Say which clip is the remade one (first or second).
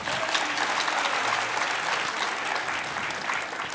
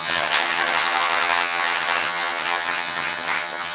second